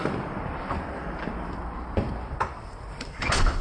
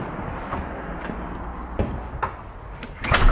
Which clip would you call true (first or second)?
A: second